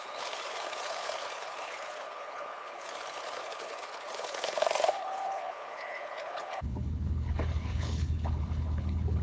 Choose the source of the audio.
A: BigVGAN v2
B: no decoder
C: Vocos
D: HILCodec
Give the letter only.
D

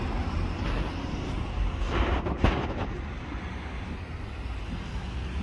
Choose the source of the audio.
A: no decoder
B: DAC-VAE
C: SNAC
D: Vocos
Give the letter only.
A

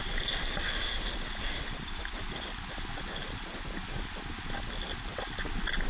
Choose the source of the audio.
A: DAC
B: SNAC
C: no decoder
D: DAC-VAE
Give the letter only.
C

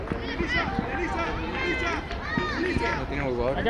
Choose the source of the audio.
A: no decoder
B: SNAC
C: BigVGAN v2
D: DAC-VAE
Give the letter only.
A